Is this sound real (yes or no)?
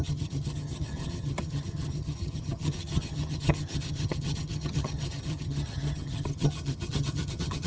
no